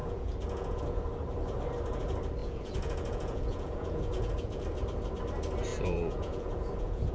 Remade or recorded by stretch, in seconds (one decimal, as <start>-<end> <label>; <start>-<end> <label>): 0.0-0.8 remade; 0.8-2.4 recorded; 2.4-4.6 remade; 4.6-5.7 recorded; 5.7-7.1 remade